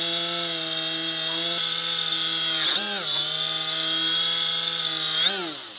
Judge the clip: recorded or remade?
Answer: recorded